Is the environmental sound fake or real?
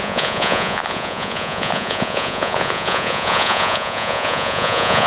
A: fake